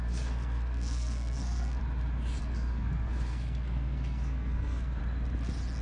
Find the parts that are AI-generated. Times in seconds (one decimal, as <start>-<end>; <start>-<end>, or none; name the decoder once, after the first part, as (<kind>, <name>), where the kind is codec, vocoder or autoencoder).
0.0-1.8 (codec, SNAC); 2.4-5.0